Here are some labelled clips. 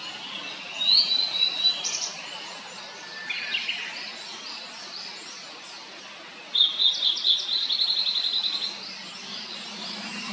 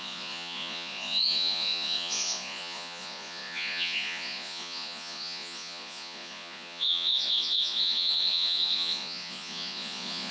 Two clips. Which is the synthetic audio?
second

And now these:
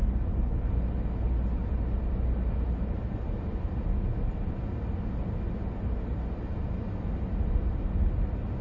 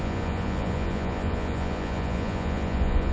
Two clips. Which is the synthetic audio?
second